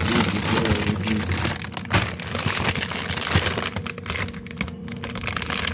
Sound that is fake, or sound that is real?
real